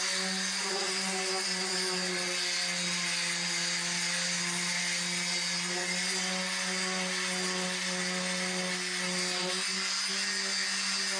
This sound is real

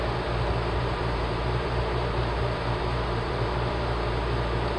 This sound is fake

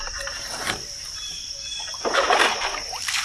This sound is fake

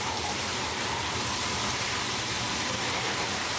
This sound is fake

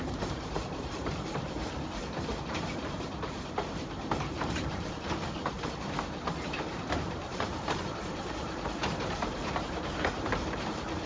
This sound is fake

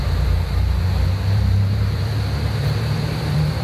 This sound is fake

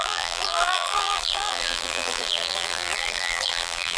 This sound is fake